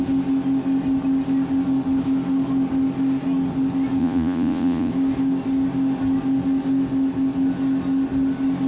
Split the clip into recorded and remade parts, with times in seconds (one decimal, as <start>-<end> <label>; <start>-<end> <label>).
0.0-4.0 recorded; 4.0-4.9 remade; 4.9-8.7 recorded